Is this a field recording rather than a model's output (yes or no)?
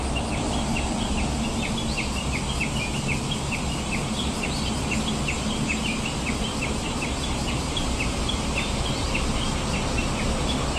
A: yes